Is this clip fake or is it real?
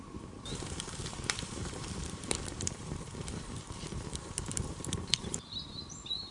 fake